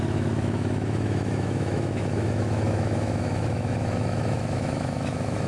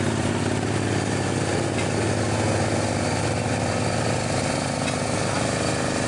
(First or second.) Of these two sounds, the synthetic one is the first